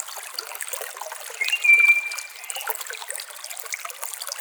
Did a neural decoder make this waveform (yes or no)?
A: no